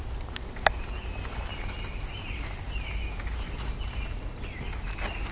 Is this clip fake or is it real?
real